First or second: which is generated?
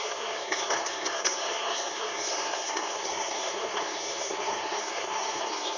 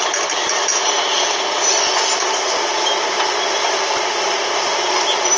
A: first